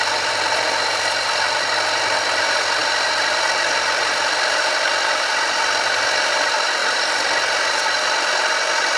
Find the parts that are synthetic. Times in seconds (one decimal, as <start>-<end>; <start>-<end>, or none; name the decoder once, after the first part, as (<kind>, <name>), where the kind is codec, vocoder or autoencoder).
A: none